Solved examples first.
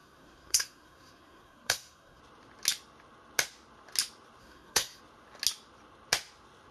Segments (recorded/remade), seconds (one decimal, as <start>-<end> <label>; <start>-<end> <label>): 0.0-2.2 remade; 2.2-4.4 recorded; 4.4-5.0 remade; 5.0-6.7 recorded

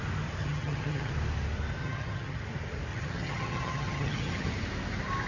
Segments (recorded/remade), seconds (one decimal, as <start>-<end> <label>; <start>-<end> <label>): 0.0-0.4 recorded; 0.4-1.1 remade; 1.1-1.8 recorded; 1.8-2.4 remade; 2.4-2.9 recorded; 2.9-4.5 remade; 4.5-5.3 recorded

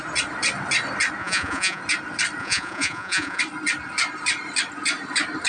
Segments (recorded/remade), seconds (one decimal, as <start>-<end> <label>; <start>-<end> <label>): 0.0-1.2 recorded; 1.2-1.8 remade; 1.8-2.4 recorded; 2.4-3.4 remade; 3.4-5.5 recorded

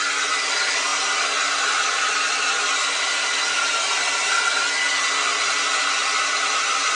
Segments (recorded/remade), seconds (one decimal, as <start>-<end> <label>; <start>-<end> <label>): 0.0-6.9 recorded

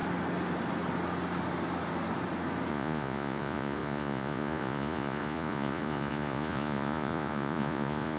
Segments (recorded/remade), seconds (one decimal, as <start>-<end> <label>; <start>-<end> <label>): 0.0-2.7 recorded; 2.7-8.2 remade

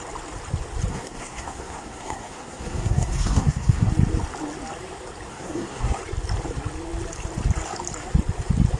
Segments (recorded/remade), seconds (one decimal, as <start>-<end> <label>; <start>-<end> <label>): 0.0-0.9 recorded; 0.9-3.9 remade; 3.9-5.3 recorded; 5.3-6.0 remade; 6.0-8.8 recorded

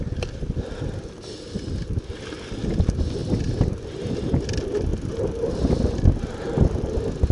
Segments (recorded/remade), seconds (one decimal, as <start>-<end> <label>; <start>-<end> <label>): 0.0-7.3 recorded

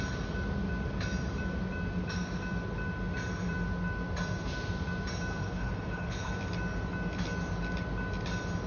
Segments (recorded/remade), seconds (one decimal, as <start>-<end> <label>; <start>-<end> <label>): 0.0-5.4 recorded; 5.4-6.3 remade; 6.3-8.7 recorded